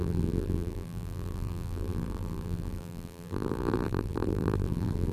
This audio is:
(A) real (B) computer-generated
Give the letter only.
B